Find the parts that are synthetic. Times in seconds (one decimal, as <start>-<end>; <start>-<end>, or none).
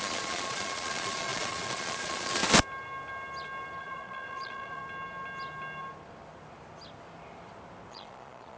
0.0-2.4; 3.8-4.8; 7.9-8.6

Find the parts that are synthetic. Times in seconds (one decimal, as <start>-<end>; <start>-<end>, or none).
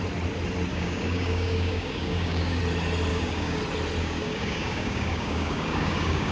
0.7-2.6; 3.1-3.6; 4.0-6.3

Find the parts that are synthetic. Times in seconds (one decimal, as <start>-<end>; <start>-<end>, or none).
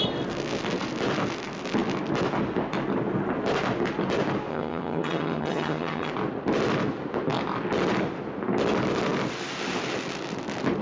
4.5-6.1